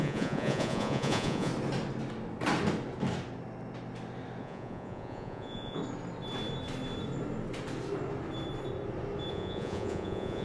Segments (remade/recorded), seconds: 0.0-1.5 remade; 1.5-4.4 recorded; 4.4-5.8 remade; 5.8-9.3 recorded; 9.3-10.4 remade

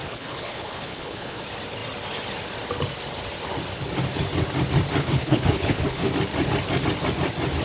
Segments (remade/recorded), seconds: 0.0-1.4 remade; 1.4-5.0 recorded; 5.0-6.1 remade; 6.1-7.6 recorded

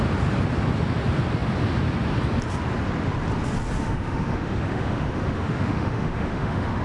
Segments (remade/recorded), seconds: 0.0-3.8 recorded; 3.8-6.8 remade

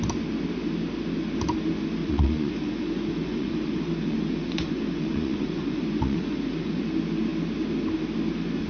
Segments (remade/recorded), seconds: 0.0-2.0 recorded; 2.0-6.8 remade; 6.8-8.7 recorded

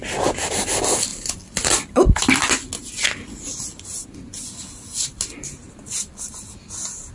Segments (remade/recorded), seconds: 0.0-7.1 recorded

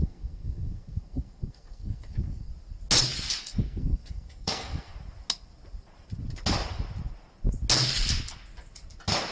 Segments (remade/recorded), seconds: 0.0-2.5 remade; 2.5-3.4 recorded; 3.4-4.9 remade; 4.9-9.3 recorded